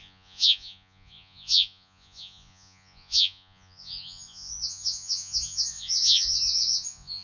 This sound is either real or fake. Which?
fake